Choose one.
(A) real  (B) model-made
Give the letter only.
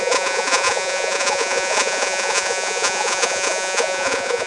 B